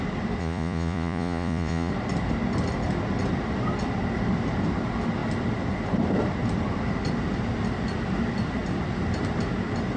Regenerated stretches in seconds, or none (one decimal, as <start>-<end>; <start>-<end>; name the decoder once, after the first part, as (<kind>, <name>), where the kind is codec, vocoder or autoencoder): 0.4-1.9 (vocoder, Vocos)